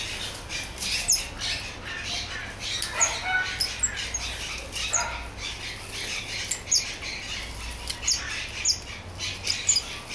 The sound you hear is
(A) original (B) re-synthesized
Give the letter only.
A